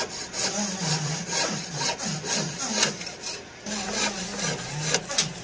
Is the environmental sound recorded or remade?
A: recorded